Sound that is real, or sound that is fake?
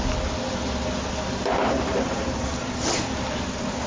real